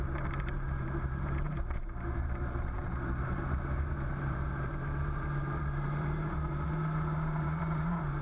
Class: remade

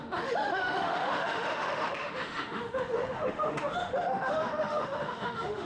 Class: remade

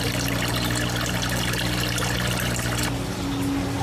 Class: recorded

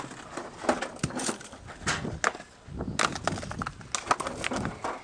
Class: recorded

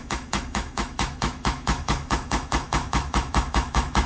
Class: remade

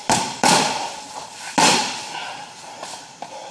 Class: remade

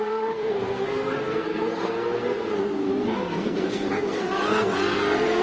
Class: remade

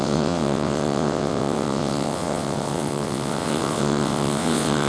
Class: remade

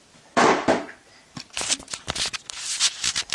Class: remade